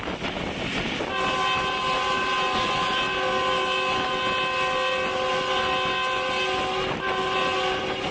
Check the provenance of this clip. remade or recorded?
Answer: recorded